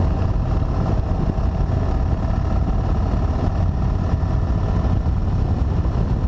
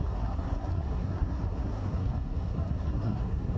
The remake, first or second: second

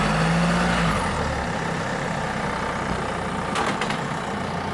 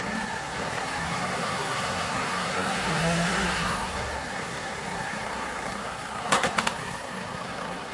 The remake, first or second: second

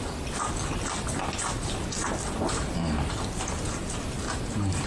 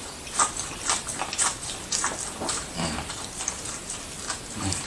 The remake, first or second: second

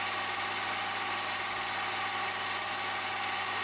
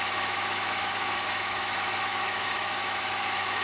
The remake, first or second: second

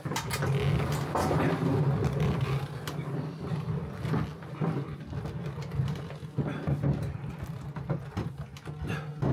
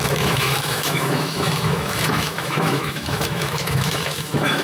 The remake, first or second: second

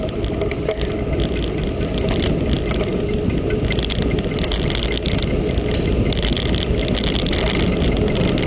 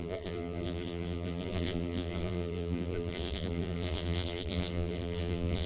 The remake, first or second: second